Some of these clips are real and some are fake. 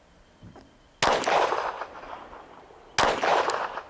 real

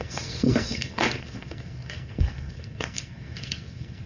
fake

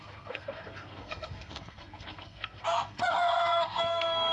fake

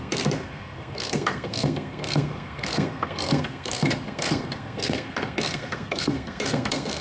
fake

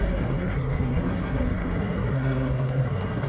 fake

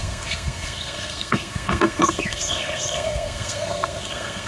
fake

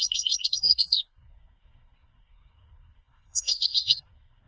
fake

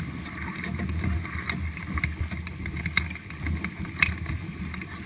real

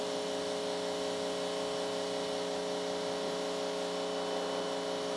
real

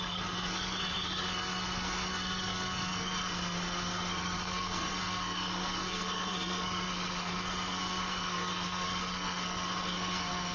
fake